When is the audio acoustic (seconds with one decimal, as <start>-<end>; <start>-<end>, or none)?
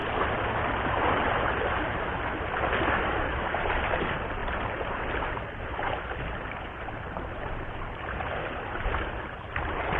0.0-0.9